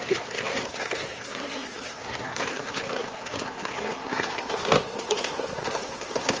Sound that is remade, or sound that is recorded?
remade